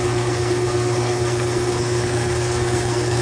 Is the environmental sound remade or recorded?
remade